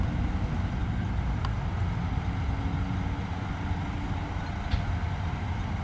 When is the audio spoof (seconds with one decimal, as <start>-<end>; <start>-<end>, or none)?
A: none